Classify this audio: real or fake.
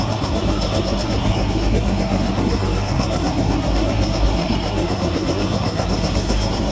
fake